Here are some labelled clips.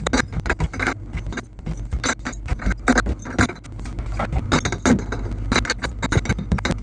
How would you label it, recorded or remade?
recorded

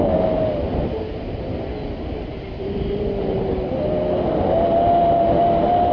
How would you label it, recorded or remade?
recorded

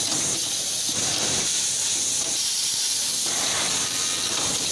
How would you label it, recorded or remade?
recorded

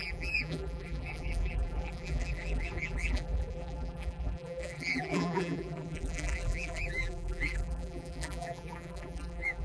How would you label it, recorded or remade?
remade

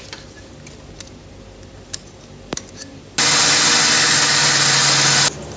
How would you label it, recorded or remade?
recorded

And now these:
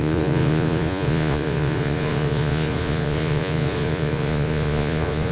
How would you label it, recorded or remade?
remade